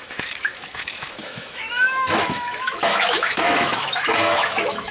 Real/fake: fake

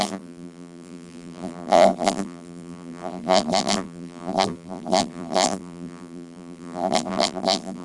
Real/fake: fake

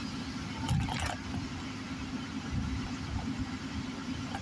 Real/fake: real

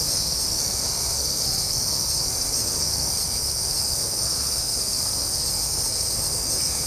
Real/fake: fake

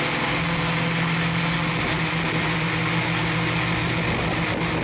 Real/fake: real